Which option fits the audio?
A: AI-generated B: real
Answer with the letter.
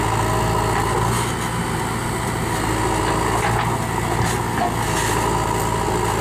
B